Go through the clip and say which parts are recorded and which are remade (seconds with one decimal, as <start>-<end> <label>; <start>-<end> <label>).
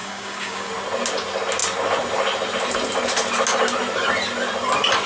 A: 0.0-0.7 remade; 0.7-5.1 recorded